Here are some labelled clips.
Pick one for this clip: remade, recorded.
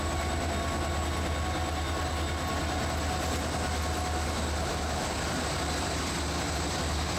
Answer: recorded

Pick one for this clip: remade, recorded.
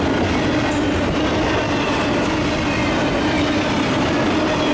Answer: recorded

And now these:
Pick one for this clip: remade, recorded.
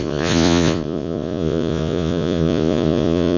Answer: remade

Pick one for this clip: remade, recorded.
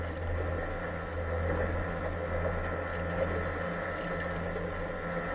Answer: recorded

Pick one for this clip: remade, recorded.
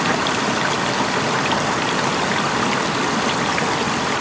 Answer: recorded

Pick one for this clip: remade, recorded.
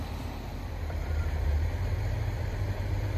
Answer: remade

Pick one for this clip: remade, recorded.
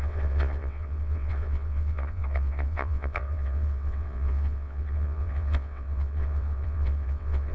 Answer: remade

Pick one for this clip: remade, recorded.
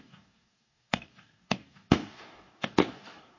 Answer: remade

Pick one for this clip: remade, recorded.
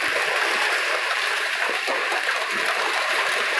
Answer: remade